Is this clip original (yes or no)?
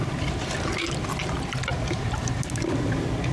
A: yes